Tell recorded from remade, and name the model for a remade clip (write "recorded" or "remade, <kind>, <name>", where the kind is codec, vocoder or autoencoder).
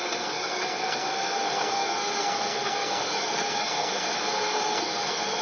remade, codec, SNAC